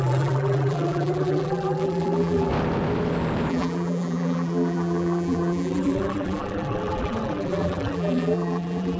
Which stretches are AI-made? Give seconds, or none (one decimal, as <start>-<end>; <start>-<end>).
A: 0.0-2.5; 3.5-9.0